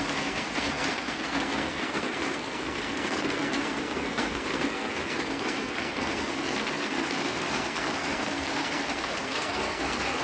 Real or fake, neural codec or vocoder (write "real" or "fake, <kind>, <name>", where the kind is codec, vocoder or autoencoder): fake, codec, SNAC